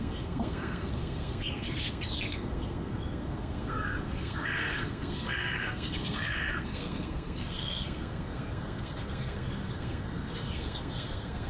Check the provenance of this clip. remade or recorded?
remade